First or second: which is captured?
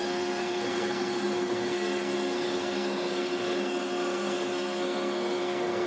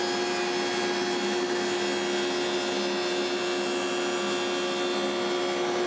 second